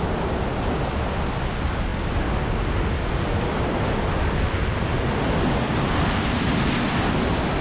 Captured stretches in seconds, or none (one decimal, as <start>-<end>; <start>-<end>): 0.0-7.6